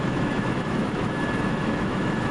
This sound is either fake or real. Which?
fake